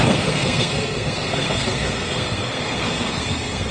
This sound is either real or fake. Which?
fake